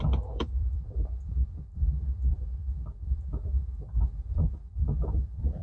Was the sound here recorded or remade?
remade